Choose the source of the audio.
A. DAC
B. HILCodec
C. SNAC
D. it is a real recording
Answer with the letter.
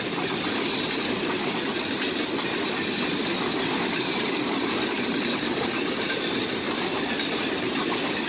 D